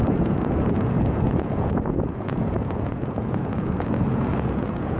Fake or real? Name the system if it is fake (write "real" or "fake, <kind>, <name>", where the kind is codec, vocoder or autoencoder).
fake, vocoder, Vocos